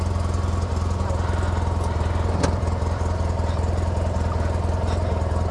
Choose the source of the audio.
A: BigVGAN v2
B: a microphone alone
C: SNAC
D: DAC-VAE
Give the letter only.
B